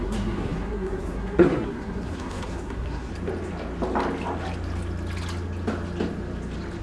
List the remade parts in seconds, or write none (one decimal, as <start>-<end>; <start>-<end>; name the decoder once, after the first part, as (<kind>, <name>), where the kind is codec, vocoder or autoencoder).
0.0-3.1 (codec, SNAC)